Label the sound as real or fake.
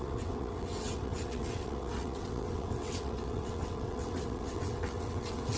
fake